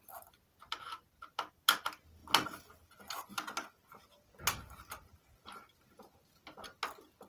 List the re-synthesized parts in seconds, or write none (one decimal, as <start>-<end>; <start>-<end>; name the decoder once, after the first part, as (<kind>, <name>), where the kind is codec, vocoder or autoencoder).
none